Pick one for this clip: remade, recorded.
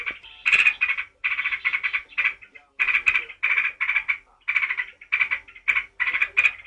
recorded